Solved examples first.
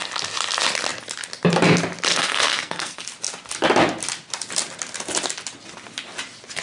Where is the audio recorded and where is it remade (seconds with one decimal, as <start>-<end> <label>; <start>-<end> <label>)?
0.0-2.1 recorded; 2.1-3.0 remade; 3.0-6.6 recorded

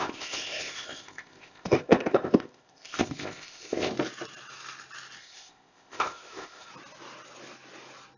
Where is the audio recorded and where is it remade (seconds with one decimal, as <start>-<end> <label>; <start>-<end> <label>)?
0.0-3.9 remade; 3.9-5.2 recorded; 5.2-6.7 remade; 6.7-8.2 recorded

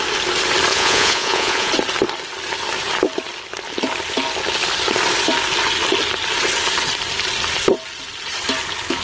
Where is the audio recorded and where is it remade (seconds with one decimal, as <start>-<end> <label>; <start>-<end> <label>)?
0.0-0.7 recorded; 0.7-1.7 remade; 1.7-9.0 recorded

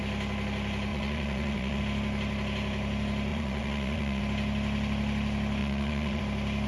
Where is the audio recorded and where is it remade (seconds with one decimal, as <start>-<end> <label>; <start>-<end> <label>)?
0.0-0.9 recorded; 0.9-1.8 remade; 1.8-3.3 recorded; 3.3-4.2 remade; 4.2-5.6 recorded; 5.6-6.2 remade; 6.2-6.7 recorded

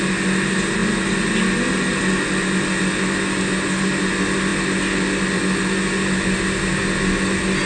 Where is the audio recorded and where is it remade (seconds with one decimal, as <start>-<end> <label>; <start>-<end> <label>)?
0.0-7.7 recorded